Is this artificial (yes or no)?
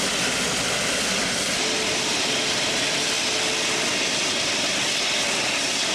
no